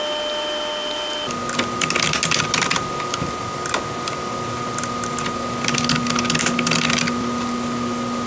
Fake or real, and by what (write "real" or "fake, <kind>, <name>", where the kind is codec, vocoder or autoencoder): real